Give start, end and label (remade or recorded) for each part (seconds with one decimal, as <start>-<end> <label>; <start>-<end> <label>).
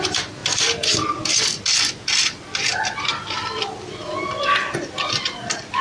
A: 0.0-5.8 recorded